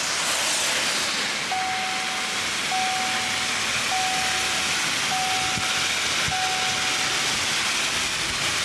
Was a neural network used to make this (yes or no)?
no